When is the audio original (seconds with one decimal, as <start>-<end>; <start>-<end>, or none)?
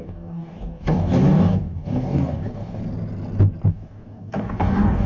2.8-3.7